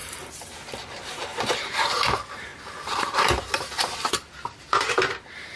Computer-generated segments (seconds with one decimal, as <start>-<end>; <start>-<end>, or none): 0.0-5.6